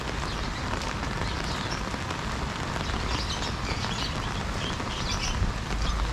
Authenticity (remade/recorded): recorded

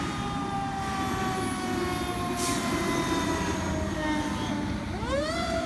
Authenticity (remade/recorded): recorded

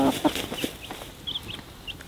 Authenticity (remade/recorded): recorded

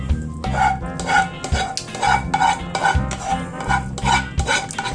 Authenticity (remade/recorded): recorded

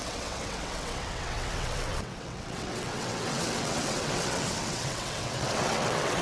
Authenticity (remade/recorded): remade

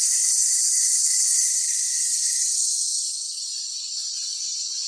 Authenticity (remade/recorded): recorded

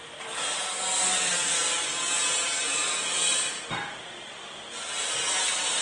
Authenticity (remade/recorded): recorded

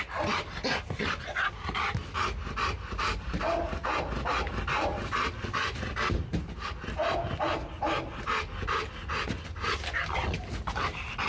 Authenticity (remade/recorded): recorded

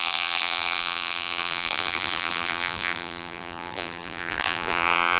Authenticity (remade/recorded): remade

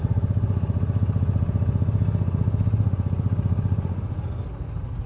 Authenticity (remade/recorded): recorded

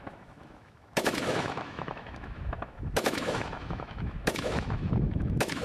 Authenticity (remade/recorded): remade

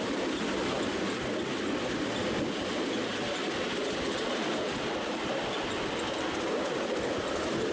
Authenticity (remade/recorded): recorded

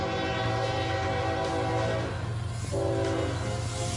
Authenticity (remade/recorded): recorded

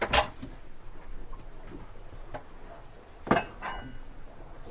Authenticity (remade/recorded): recorded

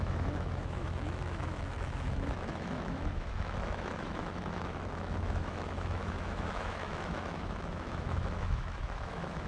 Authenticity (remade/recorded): remade